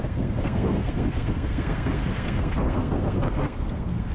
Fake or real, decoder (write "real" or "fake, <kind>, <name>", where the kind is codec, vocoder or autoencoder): fake, codec, SNAC